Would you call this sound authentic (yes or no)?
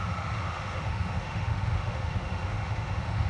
no